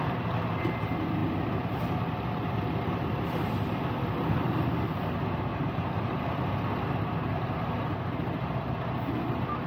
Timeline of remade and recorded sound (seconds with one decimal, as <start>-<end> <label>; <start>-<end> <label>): 0.0-5.5 recorded; 5.5-6.2 remade; 6.2-9.7 recorded